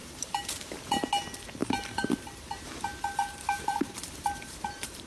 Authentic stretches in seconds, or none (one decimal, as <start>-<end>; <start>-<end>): 1.1-1.6